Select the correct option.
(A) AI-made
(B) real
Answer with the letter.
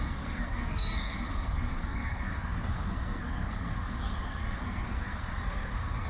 A